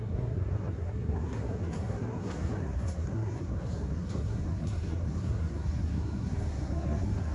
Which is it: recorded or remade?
remade